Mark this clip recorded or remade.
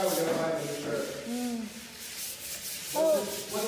recorded